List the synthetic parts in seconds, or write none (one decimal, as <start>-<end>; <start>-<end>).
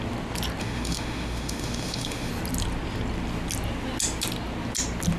0.6-2.3